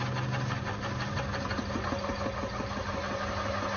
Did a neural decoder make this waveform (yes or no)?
no